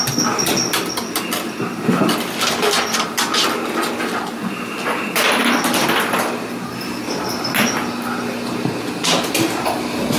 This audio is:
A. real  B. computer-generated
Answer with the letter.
A